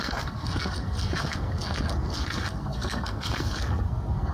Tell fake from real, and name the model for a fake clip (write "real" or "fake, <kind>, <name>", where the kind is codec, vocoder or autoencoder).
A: fake, codec, SNAC